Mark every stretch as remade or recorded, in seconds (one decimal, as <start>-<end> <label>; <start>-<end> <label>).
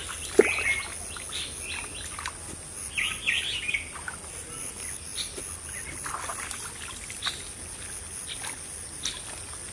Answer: 0.0-9.7 recorded